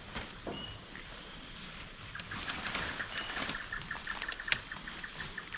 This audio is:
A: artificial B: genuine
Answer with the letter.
B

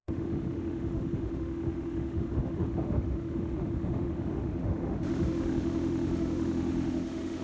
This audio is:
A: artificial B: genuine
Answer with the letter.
A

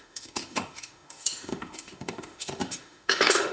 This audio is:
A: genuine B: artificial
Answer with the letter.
B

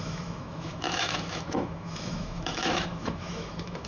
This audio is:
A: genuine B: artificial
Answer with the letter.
B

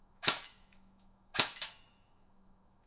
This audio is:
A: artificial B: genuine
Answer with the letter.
A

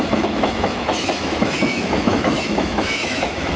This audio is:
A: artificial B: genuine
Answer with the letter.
A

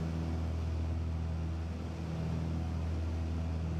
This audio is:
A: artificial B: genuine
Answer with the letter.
B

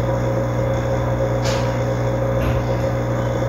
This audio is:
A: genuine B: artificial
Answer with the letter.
A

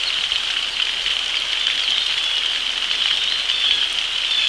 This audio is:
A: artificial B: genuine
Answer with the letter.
B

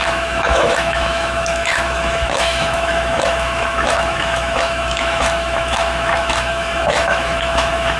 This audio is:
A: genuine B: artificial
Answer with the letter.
B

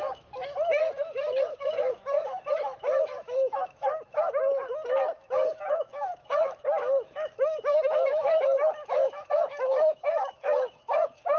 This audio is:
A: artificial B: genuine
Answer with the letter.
A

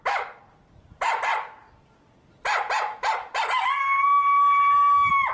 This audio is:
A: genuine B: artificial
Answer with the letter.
A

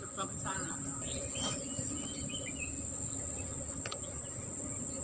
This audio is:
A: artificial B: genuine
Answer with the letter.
B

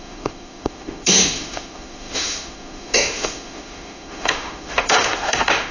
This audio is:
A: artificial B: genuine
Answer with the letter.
A